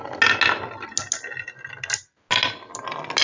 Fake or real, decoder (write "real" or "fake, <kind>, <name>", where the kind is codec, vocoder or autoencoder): real